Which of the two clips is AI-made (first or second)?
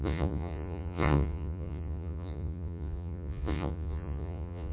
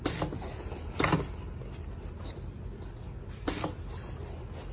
first